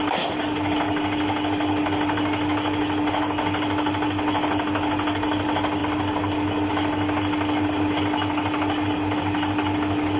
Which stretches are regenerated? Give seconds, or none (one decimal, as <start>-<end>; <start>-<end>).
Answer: none